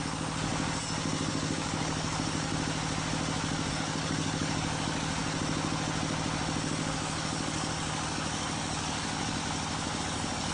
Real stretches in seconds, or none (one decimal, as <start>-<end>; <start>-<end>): 0.5-1.3; 2.5-3.7; 5.2-6.7; 9.4-10.0